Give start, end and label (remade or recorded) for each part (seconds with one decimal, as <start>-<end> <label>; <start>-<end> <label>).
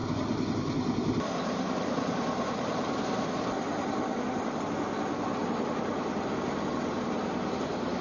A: 0.0-4.6 remade; 4.6-5.4 recorded; 5.4-6.3 remade; 6.3-8.0 recorded